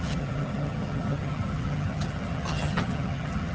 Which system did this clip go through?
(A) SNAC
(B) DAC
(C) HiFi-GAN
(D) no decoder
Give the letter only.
C